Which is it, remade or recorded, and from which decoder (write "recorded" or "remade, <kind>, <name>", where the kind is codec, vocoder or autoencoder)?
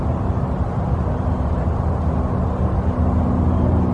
recorded